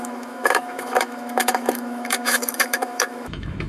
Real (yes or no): no